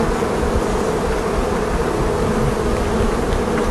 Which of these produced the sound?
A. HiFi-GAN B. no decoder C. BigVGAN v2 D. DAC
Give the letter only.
B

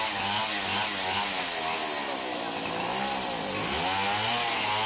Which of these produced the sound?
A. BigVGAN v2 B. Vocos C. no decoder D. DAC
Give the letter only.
C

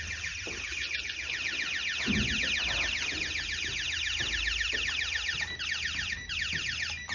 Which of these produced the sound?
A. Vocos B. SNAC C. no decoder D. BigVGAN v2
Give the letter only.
C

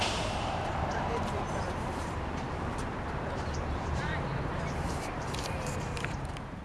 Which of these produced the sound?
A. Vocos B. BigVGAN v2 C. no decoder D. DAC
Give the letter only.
B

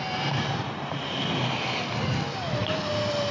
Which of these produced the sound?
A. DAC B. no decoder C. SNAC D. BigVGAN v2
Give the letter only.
B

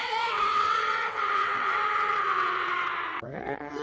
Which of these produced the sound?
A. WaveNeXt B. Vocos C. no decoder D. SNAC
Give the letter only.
A